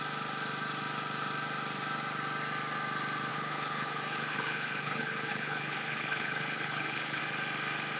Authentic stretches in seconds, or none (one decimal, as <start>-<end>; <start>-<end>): 0.0-3.3; 7.2-8.0